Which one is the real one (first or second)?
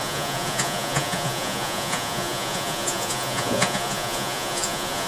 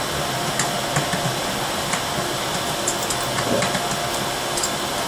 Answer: second